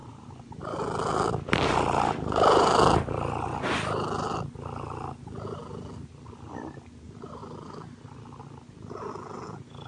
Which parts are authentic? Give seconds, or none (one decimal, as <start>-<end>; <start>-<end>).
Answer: 0.6-9.9

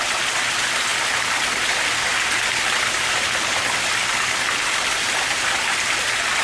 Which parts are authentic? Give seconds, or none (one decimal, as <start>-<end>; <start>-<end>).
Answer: 0.0-6.4

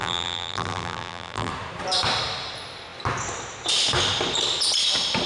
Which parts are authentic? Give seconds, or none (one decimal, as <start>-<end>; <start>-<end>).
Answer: 1.5-5.3

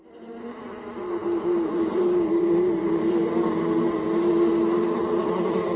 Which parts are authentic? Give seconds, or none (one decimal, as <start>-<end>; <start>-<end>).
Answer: 0.0-1.2; 2.8-5.8

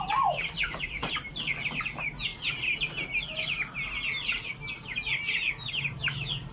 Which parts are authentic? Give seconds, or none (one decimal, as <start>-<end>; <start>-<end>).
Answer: 0.0-6.5